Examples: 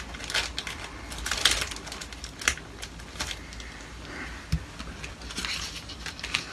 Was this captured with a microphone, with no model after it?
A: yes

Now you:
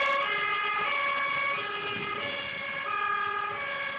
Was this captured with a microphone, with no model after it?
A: yes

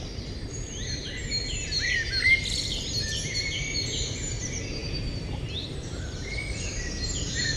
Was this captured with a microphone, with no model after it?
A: no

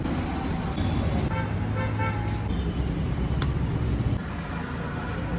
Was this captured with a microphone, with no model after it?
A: yes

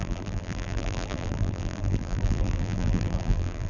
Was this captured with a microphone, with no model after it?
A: no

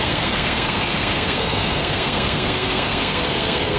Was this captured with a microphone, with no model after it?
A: no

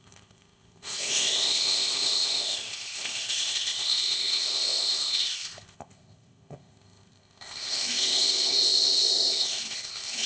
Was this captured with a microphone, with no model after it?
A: no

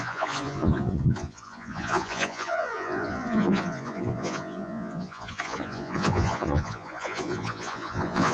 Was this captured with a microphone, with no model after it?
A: no